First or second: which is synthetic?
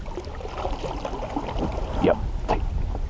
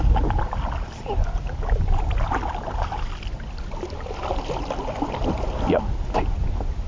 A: first